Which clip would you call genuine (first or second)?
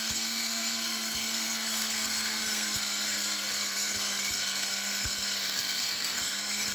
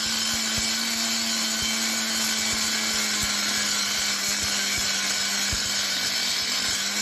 second